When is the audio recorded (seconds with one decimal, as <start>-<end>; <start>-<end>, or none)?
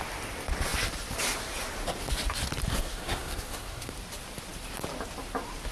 0.0-2.7; 3.9-5.7